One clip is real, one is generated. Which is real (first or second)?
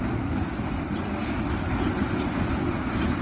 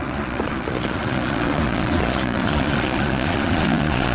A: first